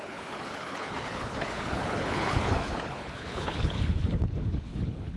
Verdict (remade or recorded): remade